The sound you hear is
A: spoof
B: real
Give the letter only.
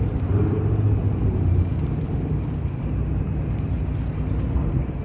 B